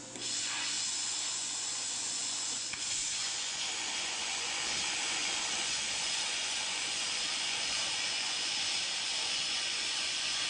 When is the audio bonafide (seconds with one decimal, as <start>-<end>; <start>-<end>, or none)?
none